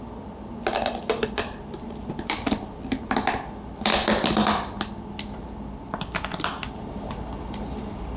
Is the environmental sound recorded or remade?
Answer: recorded